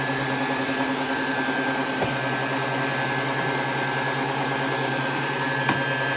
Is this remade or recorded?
recorded